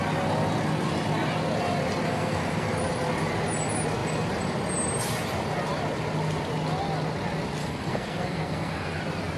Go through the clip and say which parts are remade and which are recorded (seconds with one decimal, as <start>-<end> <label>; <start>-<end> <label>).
0.0-2.1 recorded; 2.1-2.8 remade; 2.8-7.6 recorded; 7.6-9.0 remade; 9.0-9.4 recorded